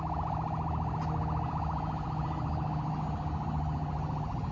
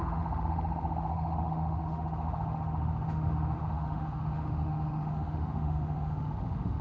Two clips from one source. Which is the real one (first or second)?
first